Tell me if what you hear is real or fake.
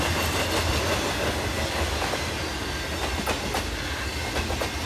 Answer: real